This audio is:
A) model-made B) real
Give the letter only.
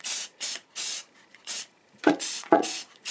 A